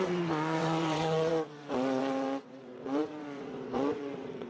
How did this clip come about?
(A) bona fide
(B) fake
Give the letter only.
B